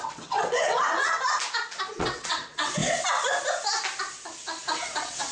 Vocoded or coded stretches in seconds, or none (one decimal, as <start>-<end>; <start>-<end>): 0.0-1.1; 1.9-2.8; 4.6-5.3